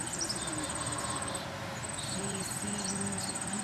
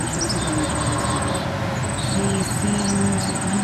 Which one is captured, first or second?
second